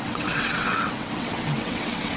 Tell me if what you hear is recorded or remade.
remade